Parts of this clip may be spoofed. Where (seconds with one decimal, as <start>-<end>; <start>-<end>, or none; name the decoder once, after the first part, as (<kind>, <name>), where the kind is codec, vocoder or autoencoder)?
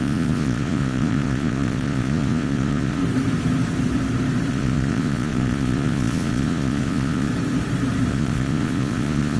0.0-3.0 (vocoder, Vocos); 4.5-7.3; 8.1-9.4